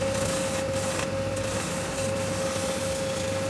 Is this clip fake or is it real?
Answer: real